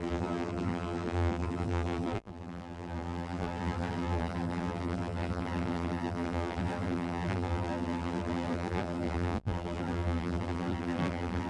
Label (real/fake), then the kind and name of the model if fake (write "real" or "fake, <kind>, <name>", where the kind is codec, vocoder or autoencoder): fake, vocoder, BigVGAN v2